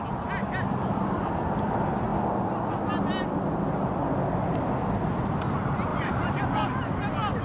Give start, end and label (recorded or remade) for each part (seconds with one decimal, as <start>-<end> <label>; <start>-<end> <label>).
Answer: 0.0-5.9 recorded; 5.9-6.4 remade; 6.4-7.4 recorded